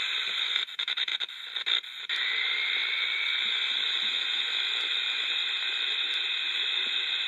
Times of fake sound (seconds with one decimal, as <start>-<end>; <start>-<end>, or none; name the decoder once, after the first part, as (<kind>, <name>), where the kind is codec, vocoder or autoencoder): 0.0-1.1 (vocoder, BigVGAN v2); 2.0-7.3